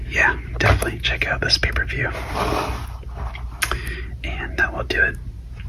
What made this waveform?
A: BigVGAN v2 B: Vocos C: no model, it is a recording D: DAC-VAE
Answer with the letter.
C